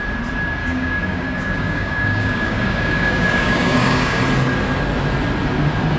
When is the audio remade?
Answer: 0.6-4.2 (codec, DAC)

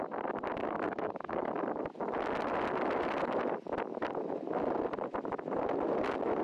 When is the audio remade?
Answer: 0.6-1.5 (codec, DAC)

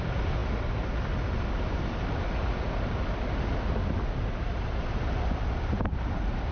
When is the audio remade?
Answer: none

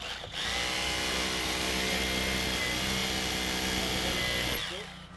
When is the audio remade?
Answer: 1.4-2.0 (codec, DAC)